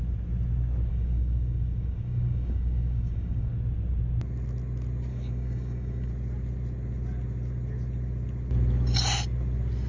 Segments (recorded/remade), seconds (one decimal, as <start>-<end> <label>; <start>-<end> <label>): 0.0-0.9 recorded; 0.9-3.5 remade; 3.5-5.1 recorded; 5.1-6.1 remade; 6.1-9.9 recorded